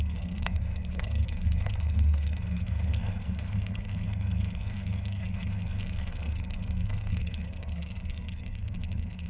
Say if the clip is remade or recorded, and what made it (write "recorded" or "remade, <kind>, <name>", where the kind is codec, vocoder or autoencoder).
remade, codec, SNAC